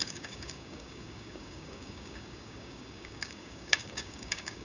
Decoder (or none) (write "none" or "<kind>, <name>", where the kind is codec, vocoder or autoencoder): codec, DAC